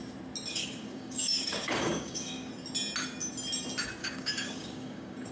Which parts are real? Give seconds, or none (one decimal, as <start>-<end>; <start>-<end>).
0.0-0.5; 2.5-4.0